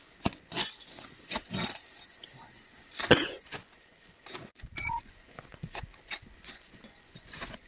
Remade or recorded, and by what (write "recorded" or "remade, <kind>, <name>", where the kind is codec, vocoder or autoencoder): remade, vocoder, Vocos